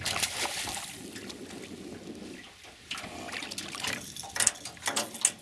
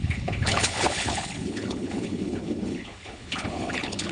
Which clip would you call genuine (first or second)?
first